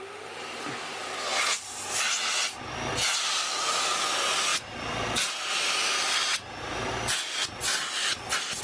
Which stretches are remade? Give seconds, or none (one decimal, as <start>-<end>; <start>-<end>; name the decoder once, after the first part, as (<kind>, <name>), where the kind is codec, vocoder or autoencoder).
none